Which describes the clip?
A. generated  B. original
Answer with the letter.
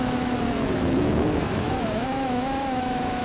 A